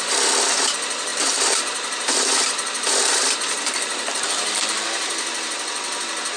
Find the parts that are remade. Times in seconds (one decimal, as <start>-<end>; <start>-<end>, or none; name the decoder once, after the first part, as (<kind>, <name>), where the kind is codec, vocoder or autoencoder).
1.1-4.6 (vocoder, BigVGAN v2)